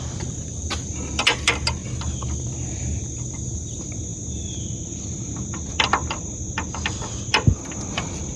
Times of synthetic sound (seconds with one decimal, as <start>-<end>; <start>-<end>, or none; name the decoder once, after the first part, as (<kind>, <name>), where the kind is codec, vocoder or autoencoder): none